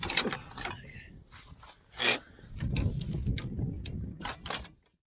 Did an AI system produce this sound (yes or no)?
no